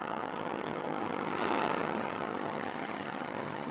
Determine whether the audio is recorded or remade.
remade